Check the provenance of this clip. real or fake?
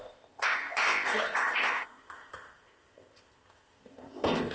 fake